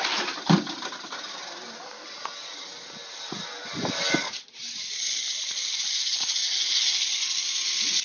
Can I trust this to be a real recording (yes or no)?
yes